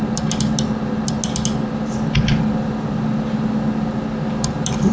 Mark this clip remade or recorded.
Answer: recorded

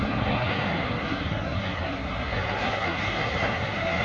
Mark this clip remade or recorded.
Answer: remade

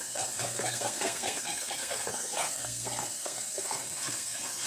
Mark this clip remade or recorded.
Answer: remade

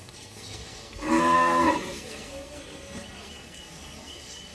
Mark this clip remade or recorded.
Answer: remade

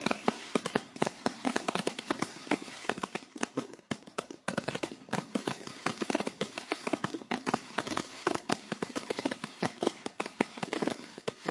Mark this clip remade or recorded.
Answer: remade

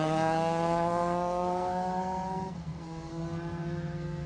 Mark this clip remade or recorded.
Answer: remade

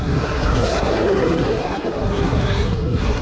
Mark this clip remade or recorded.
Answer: remade